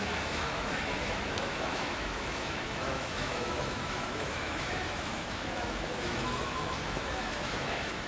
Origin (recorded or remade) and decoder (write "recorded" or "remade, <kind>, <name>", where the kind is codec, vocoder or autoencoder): remade, autoencoder, DAC-VAE